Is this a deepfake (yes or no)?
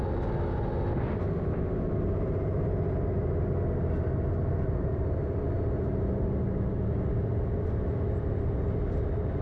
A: no